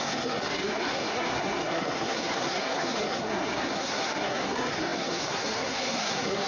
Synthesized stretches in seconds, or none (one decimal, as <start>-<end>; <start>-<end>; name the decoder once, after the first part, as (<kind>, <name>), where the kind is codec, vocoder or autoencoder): 0.0-6.5 (codec, SNAC)